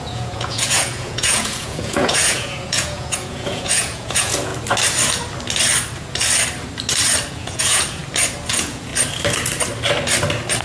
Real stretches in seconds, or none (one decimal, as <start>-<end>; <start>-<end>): 4.5-7.3; 8.0-8.5; 8.9-10.6